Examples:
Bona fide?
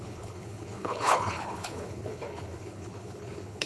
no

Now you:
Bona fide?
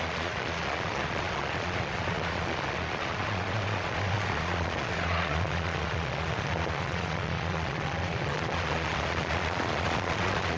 no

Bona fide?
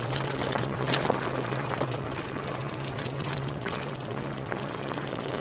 no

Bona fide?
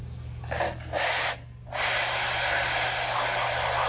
yes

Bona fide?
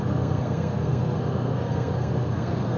no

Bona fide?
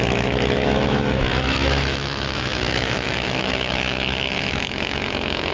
no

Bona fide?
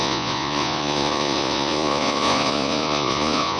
no